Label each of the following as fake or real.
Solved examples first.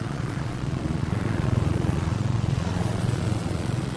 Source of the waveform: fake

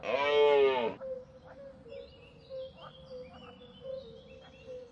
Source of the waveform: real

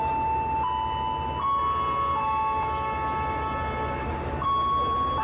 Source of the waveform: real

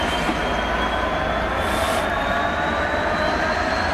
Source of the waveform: real